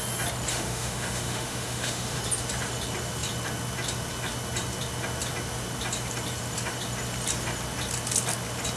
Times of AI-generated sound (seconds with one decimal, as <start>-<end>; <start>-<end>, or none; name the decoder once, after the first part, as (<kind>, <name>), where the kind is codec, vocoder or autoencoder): 0.5-2.2 (autoencoder, DAC-VAE)